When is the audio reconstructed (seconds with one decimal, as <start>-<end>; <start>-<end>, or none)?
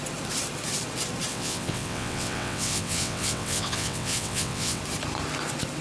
1.3-4.8